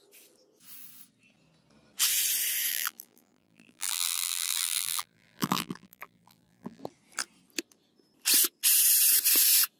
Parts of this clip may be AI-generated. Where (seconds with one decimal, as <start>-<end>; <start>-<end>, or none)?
2.7-6.8